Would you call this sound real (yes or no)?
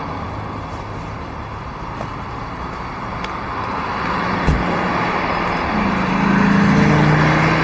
yes